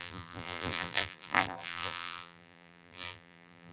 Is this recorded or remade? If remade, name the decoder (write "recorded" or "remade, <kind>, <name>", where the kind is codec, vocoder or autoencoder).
remade, vocoder, BigVGAN v2